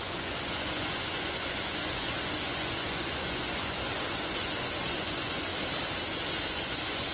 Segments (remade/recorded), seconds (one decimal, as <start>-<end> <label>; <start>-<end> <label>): 0.0-5.5 remade; 5.5-6.5 recorded; 6.5-7.1 remade

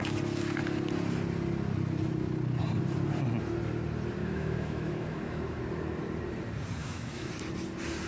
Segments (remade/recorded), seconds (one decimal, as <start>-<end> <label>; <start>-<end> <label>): 0.0-4.2 recorded; 4.2-5.6 remade; 5.6-6.8 recorded; 6.8-7.3 remade; 7.3-8.1 recorded